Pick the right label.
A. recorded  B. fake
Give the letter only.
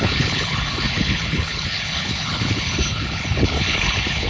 B